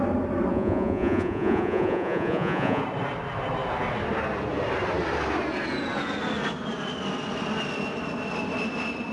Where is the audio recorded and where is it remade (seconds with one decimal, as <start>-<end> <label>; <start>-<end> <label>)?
0.0-0.5 recorded; 0.5-2.8 remade; 2.8-9.1 recorded